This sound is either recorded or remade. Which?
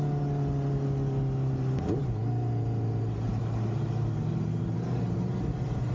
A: recorded